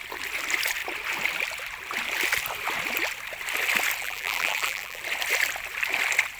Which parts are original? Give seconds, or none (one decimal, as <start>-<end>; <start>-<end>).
0.0-4.0; 5.0-6.4